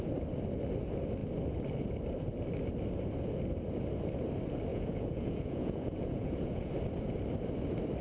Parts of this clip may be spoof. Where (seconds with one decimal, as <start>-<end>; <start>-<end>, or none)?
4.7-6.7